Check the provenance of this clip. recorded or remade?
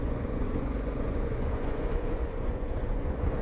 remade